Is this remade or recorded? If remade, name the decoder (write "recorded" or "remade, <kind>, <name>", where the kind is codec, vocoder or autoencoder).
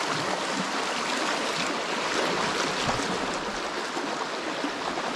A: recorded